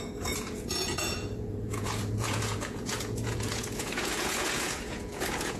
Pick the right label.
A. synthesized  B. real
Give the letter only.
A